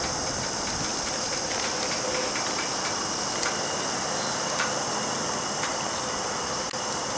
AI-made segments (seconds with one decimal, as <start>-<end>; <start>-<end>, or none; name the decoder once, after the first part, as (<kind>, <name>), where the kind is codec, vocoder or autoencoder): none